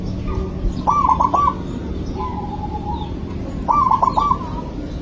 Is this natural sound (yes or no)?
yes